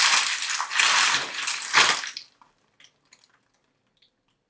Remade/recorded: recorded